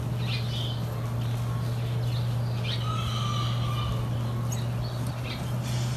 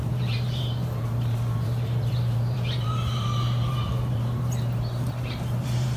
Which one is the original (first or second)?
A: first